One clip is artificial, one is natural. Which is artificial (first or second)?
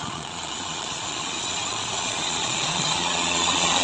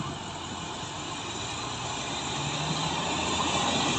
first